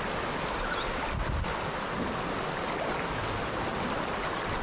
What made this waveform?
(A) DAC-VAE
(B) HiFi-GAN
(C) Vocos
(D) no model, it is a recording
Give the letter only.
D